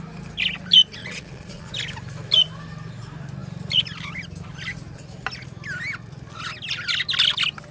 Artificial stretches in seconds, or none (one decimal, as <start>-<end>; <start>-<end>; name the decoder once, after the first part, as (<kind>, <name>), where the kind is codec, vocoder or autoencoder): 1.0-1.7 (vocoder, Vocos)